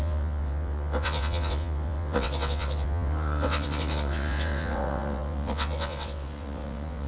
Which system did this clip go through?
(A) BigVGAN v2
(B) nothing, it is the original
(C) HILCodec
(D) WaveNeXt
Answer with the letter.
D